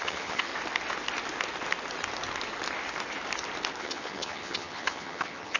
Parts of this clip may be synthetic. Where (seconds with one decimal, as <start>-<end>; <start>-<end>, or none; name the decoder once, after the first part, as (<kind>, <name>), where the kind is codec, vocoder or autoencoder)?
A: 0.0-0.5 (vocoder, HiFi-GAN); 3.8-5.6